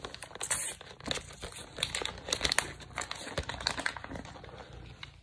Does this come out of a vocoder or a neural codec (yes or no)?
no